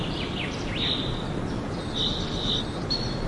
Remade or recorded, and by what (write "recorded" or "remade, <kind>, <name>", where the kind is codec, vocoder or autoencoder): recorded